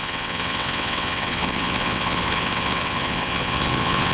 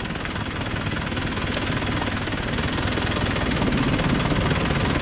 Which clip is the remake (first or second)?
first